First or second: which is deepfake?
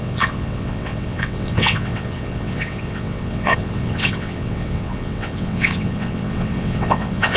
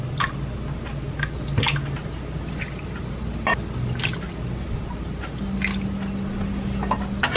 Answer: first